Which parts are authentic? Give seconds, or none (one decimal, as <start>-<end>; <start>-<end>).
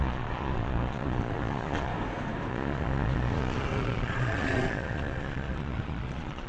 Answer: 1.9-2.5